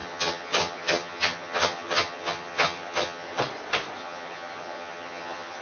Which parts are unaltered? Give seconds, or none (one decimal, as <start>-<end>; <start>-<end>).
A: 3.4-4.0